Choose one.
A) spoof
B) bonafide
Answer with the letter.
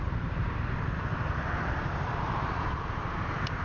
A